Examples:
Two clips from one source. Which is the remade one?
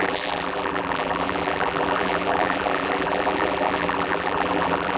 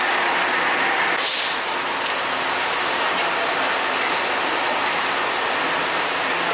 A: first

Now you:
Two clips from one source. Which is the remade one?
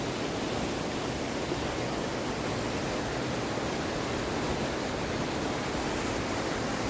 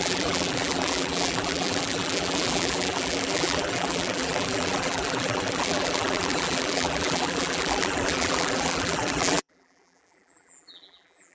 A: second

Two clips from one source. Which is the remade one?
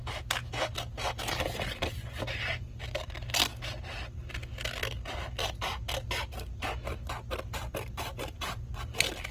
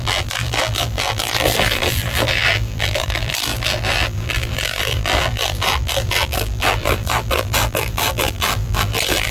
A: second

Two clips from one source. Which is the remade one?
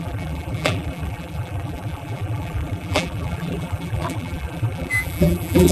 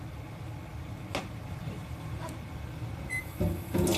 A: first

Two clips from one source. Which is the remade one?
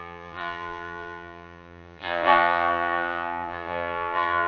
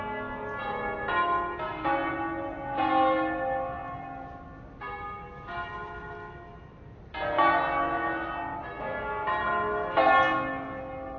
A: first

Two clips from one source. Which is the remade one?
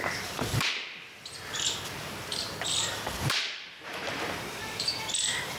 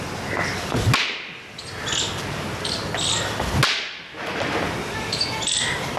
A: first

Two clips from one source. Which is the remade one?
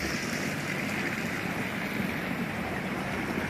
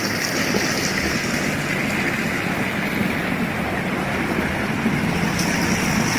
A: first